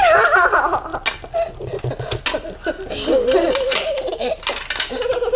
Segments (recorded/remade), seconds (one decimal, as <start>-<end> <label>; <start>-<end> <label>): 0.0-5.4 recorded